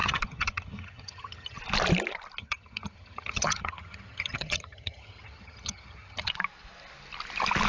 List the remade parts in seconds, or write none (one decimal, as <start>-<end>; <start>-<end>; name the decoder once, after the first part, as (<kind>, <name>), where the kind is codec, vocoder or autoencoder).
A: 0.0-1.6 (vocoder, HiFi-GAN); 2.4-6.3